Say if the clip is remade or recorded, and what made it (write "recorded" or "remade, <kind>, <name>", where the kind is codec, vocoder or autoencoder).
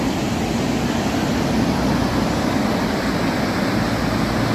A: recorded